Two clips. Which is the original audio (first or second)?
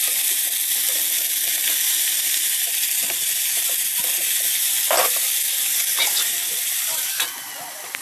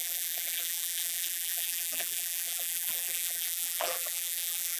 first